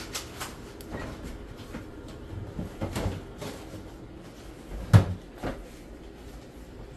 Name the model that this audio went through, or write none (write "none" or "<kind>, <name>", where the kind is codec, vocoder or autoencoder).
none